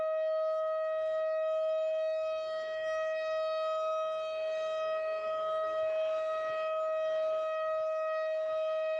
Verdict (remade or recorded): remade